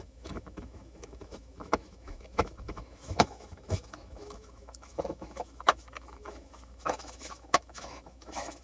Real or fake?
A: fake